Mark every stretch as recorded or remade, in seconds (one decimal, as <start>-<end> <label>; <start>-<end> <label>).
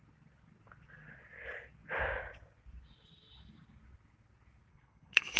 0.0-4.7 recorded; 4.7-5.4 remade